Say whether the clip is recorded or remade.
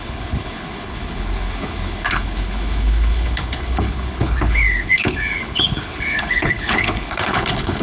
remade